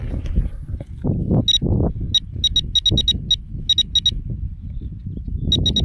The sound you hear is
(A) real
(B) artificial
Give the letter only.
A